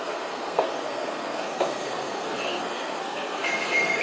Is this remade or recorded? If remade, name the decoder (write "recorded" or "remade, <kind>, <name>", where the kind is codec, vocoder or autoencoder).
remade, codec, SNAC